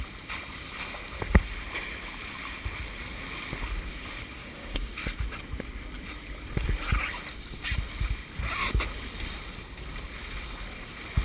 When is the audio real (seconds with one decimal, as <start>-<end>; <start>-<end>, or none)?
0.0-4.4; 5.0-11.2